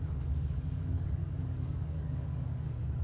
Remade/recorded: remade